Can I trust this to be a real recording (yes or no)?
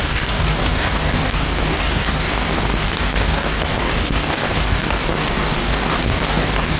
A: no